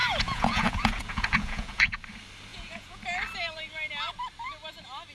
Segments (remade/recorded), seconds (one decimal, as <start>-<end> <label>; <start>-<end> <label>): 0.0-2.0 remade; 2.0-2.5 recorded; 2.5-3.0 remade; 3.0-5.1 recorded